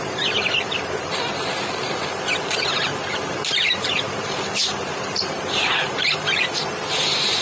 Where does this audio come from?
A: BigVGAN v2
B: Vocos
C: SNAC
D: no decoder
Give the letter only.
A